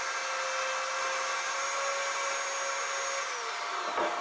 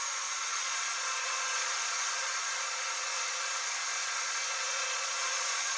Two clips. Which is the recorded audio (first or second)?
first